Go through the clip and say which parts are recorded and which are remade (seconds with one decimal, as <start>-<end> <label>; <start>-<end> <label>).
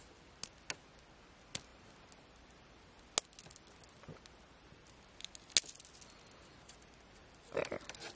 0.0-7.2 recorded; 7.2-7.7 remade; 7.7-8.2 recorded